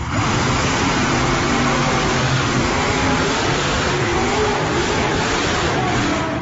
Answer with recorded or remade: remade